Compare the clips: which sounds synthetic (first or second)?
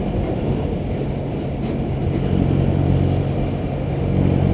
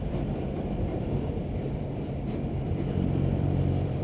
second